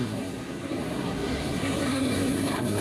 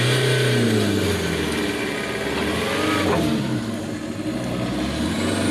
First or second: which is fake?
first